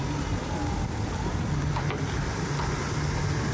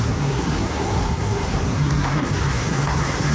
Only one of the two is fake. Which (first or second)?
second